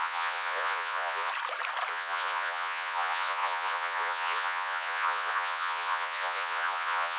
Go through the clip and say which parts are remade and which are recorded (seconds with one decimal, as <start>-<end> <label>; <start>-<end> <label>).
0.0-1.3 remade; 1.3-1.9 recorded; 1.9-7.2 remade